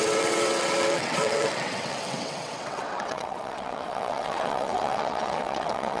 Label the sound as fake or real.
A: fake